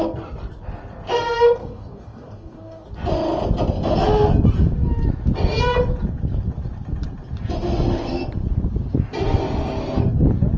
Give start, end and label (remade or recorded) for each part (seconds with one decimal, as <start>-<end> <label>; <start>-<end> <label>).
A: 0.0-1.6 recorded; 1.6-2.9 remade; 2.9-10.6 recorded